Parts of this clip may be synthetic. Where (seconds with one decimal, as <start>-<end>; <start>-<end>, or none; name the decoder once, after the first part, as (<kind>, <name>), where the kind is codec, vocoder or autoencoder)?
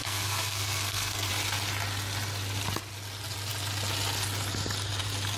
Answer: 0.0-1.3 (codec, SNAC)